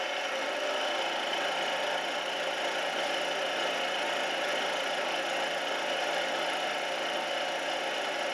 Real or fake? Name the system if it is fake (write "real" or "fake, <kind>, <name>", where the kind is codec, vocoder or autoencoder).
real